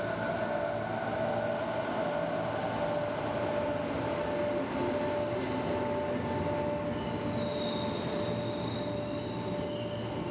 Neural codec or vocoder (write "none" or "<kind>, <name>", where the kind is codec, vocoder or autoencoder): none